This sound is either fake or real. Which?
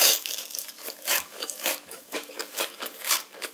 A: fake